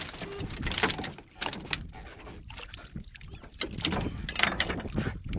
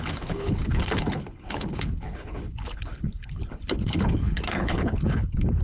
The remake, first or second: second